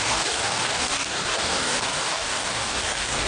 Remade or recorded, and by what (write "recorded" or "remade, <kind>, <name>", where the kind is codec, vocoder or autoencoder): remade, codec, DAC